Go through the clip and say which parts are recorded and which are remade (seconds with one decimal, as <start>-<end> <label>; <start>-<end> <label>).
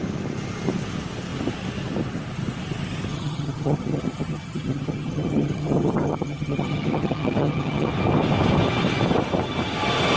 0.0-3.1 recorded; 3.1-7.9 remade; 7.9-10.2 recorded